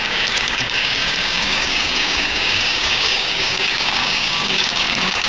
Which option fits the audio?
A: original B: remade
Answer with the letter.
B